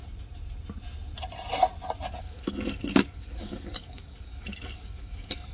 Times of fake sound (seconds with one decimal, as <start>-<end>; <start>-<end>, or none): 2.2-5.5